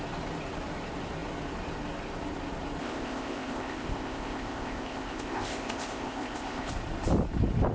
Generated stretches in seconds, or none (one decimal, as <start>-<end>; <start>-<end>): 2.8-6.7